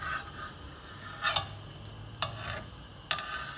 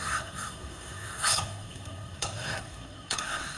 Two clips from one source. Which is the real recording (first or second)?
first